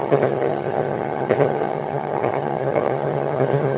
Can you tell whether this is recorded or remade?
remade